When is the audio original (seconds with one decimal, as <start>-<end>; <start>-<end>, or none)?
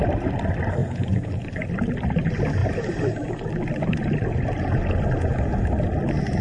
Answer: 0.0-0.8; 1.4-6.4